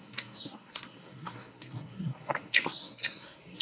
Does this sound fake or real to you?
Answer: fake